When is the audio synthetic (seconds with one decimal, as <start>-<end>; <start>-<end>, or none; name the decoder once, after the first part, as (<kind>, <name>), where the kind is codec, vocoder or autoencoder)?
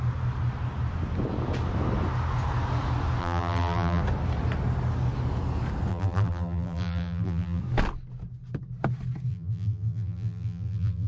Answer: 3.2-4.0 (vocoder, BigVGAN v2); 5.9-7.6; 9.3-11.1